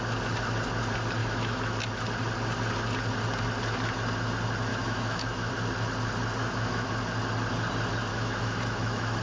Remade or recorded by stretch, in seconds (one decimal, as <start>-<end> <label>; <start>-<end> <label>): 0.0-1.2 recorded; 1.2-1.8 remade; 1.8-4.7 recorded; 4.7-5.5 remade; 5.5-6.4 recorded; 6.4-6.9 remade; 6.9-8.1 recorded; 8.1-9.2 remade